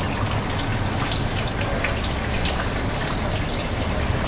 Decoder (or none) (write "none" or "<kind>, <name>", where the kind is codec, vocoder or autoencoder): none